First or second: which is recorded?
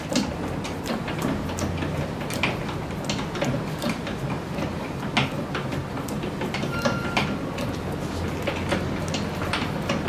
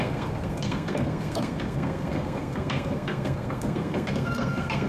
first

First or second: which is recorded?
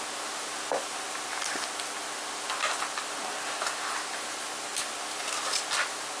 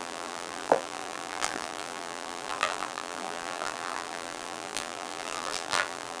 first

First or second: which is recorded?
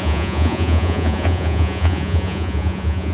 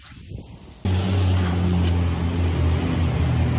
second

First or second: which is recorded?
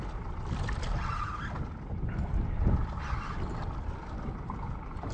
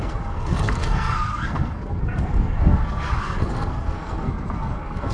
first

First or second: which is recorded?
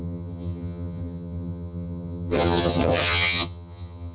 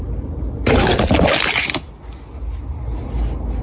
second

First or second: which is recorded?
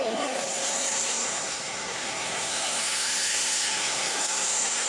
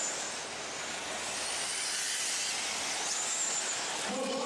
second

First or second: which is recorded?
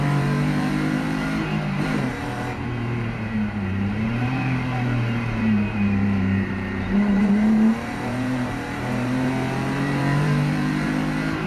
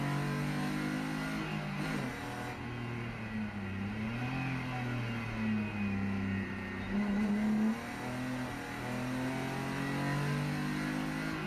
second